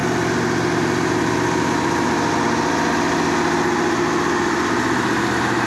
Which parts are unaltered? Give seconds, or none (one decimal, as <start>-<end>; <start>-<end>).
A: 0.0-5.7